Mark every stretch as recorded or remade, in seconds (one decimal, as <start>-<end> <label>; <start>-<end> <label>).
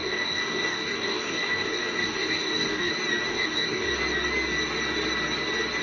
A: 0.0-2.9 remade; 2.9-3.3 recorded; 3.3-3.9 remade; 3.9-5.8 recorded